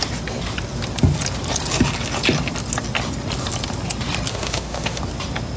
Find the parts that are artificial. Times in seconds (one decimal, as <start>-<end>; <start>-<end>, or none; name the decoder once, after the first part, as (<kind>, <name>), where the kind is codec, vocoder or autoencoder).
4.3-5.0 (autoencoder, DAC-VAE)